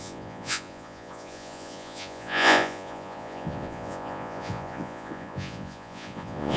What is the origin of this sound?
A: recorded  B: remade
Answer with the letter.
B